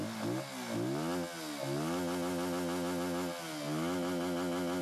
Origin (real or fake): real